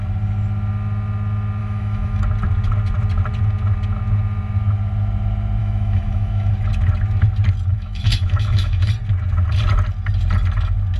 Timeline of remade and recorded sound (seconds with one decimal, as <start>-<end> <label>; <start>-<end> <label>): 0.0-1.6 recorded; 1.6-2.2 remade; 2.2-5.6 recorded; 5.6-6.5 remade; 6.5-7.7 recorded; 7.7-8.9 remade; 8.9-11.0 recorded